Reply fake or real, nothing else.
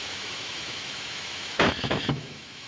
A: fake